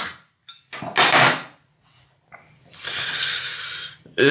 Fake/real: real